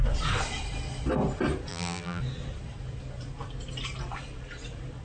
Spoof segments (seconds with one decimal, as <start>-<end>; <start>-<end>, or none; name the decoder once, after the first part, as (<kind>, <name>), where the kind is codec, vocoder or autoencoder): 1.7-2.2 (vocoder, BigVGAN v2)